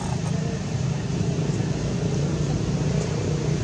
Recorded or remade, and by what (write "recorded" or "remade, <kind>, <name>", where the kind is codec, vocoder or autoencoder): recorded